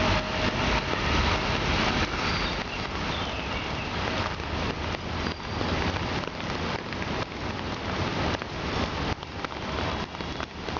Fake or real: real